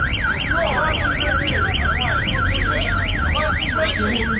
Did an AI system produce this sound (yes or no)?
no